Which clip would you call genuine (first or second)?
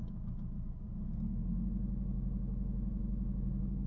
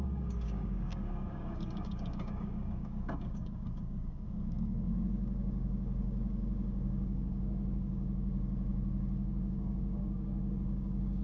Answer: first